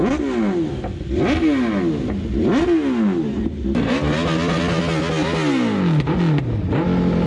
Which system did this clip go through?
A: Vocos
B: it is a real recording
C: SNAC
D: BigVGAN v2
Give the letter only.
B